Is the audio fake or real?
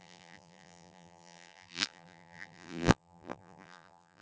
fake